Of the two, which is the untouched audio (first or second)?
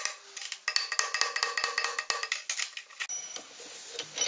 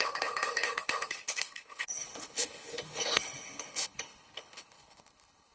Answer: first